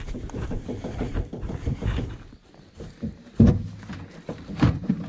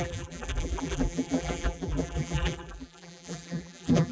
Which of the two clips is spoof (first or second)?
second